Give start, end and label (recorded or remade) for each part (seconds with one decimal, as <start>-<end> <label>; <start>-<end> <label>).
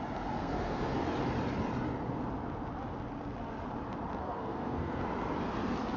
0.0-0.4 recorded; 0.4-1.0 remade; 1.0-4.2 recorded; 4.2-5.0 remade; 5.0-6.0 recorded